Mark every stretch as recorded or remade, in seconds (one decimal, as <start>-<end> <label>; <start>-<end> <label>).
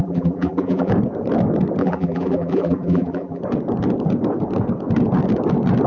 0.0-0.9 remade; 0.9-1.8 recorded; 1.8-3.4 remade; 3.4-5.9 recorded